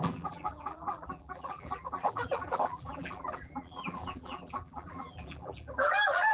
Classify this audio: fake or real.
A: fake